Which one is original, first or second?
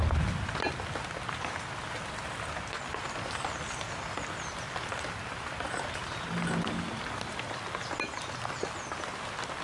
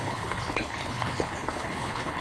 first